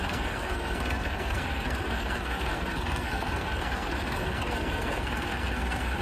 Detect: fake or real fake